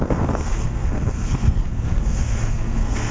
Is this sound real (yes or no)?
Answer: no